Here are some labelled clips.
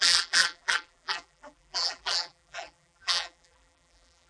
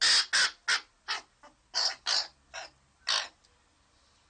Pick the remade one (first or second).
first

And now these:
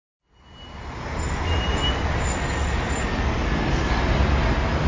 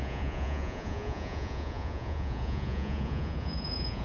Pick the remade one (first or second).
second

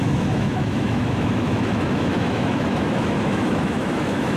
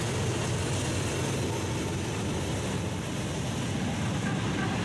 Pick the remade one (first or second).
first